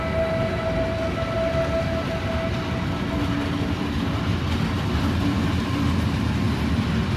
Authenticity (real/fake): real